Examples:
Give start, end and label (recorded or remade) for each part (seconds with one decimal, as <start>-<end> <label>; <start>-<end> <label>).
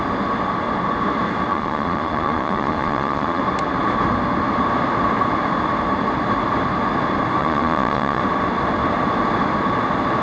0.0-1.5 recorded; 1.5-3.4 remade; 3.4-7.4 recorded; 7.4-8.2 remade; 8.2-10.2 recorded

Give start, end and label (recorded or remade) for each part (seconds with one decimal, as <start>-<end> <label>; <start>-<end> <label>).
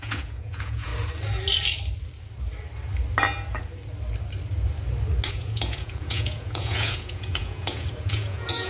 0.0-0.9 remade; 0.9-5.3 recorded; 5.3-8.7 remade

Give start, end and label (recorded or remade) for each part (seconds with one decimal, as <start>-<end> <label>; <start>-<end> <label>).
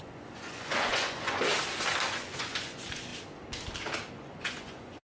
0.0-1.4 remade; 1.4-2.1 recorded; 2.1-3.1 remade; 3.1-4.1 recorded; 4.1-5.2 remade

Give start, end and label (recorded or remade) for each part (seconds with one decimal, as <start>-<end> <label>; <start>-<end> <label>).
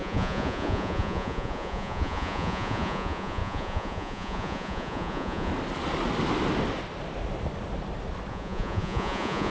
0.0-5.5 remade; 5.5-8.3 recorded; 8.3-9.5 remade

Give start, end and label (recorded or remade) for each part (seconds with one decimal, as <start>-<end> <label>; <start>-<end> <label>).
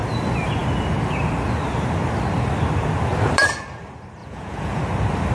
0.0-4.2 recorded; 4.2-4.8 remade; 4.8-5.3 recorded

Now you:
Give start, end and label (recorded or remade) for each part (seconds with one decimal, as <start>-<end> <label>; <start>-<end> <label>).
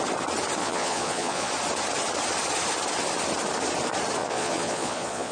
0.0-0.6 recorded; 0.6-1.5 remade; 1.5-4.2 recorded; 4.2-5.3 remade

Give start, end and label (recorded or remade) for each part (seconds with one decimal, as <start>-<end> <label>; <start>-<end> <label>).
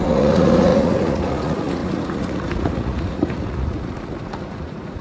0.0-5.0 remade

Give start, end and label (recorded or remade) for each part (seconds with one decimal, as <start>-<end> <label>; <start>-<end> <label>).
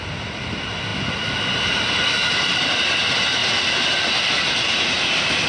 0.0-5.5 recorded